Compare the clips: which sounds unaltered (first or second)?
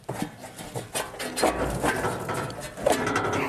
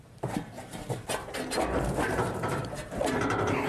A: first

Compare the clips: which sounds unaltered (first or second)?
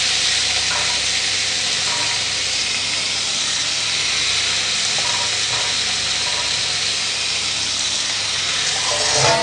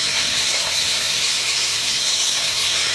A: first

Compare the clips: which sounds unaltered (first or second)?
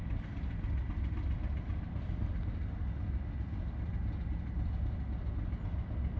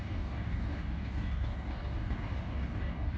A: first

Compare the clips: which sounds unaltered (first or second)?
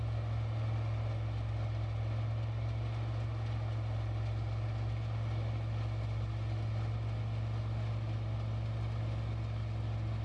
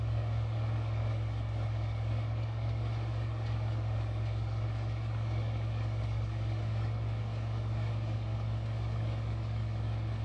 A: first